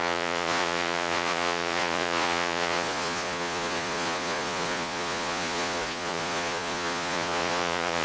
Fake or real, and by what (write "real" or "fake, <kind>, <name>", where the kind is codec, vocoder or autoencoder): fake, vocoder, Vocos